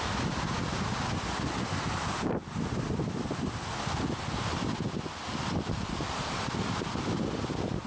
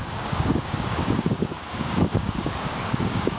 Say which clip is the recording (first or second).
first